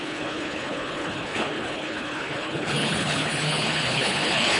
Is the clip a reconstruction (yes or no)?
yes